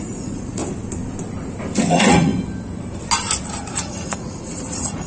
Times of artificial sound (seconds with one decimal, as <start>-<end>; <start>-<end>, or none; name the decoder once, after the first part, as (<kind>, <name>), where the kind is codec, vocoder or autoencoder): 0.0-0.6 (vocoder, Vocos); 1.9-2.3; 3.7-5.1